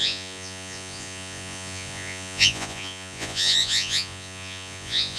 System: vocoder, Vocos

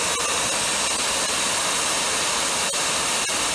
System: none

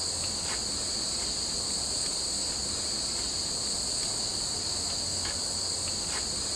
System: none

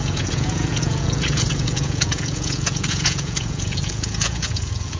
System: vocoder, Vocos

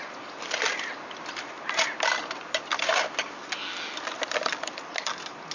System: none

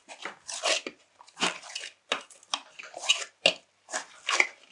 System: none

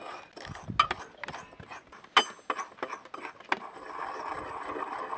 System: none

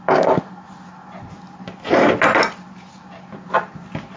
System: none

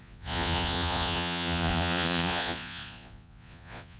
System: vocoder, Vocos